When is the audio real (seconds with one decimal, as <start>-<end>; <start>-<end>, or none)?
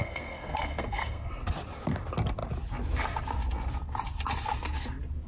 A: 1.3-5.3